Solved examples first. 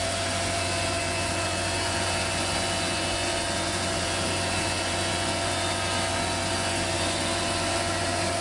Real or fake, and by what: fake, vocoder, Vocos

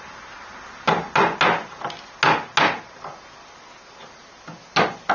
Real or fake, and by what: real